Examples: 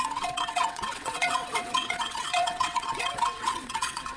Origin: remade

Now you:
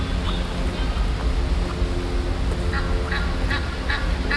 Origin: recorded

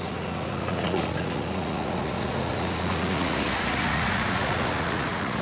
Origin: remade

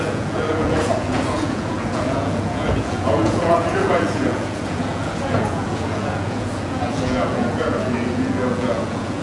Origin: remade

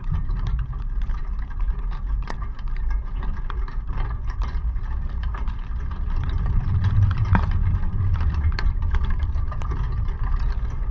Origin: remade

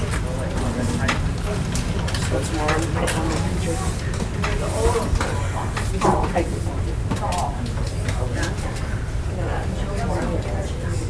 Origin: recorded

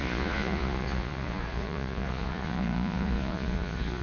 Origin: remade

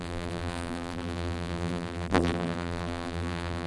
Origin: remade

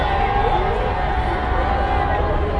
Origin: recorded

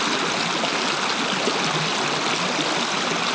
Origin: recorded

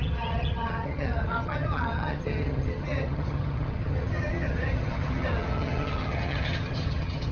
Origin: remade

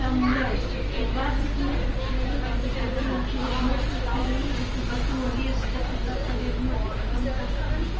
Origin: recorded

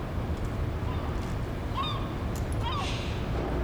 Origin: recorded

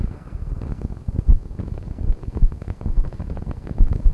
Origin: remade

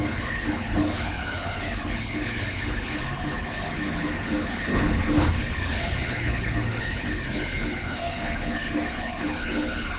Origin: remade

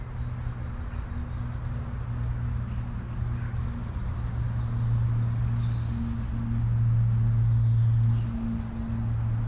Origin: recorded